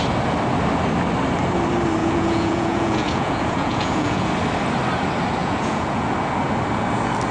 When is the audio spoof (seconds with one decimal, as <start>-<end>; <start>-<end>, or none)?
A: 2.0-4.3; 5.4-6.1